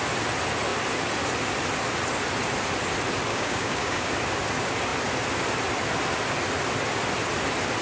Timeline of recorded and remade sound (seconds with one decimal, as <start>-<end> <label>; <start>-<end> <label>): 0.0-3.3 recorded; 3.3-4.1 remade; 4.1-7.8 recorded